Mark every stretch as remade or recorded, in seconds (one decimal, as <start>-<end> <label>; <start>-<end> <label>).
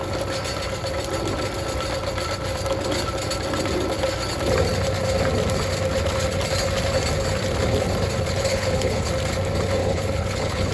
0.0-8.5 recorded; 8.5-9.1 remade; 9.1-9.8 recorded; 9.8-10.7 remade